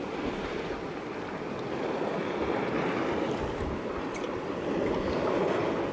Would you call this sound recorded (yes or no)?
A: yes